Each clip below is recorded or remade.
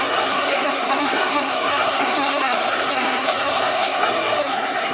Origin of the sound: remade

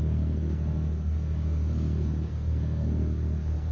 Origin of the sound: remade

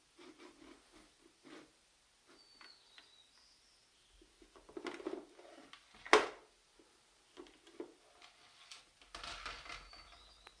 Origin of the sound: recorded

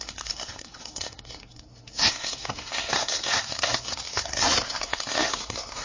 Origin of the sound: remade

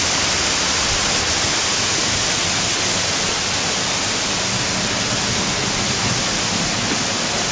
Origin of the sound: recorded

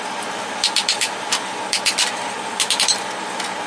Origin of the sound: recorded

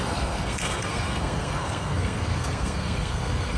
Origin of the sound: remade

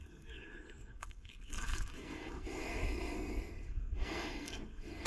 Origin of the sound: remade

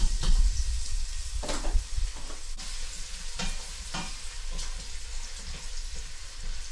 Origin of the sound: recorded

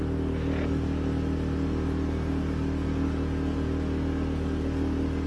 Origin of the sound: recorded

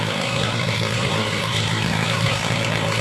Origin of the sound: remade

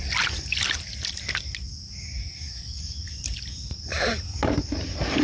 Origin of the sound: recorded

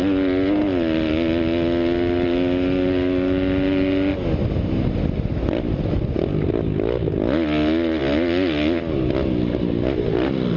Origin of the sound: recorded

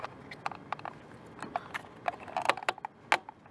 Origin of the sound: recorded